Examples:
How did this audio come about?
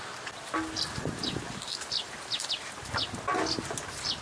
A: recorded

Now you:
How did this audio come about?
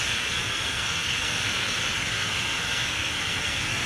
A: remade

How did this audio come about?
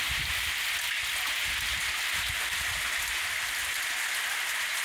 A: recorded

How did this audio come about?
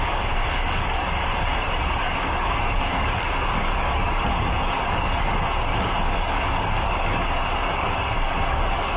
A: remade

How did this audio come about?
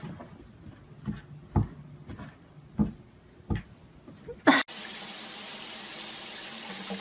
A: recorded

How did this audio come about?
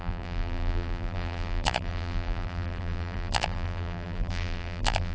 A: remade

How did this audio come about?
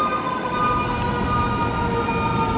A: recorded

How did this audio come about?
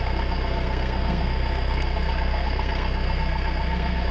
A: remade